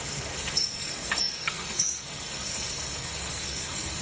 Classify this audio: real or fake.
fake